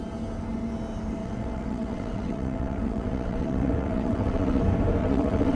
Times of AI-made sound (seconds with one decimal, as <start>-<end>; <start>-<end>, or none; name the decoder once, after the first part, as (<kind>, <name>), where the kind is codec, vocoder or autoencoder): 1.2-4.6 (vocoder, WaveNeXt); 5.0-5.6